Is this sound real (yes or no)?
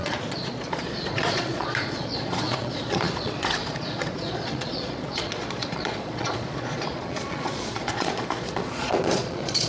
no